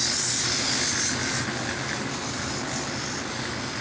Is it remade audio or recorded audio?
recorded